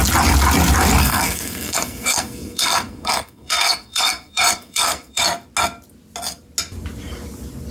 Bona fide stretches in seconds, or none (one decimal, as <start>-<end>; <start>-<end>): 0.0-1.0; 5.2-7.7